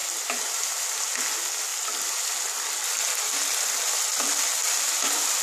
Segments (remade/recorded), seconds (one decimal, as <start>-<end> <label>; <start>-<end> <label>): 0.0-5.4 recorded